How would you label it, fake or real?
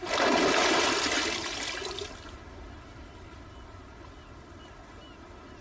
real